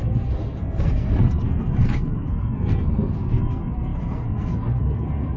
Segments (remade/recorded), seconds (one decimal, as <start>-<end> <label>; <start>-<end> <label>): 0.0-5.4 remade